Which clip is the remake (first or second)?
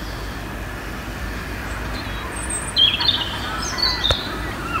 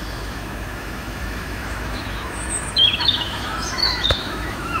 second